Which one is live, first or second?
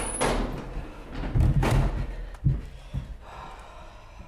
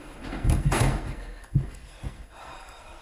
first